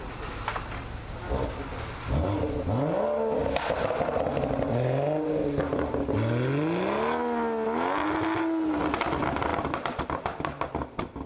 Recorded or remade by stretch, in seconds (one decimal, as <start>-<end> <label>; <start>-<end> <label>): 0.0-11.3 recorded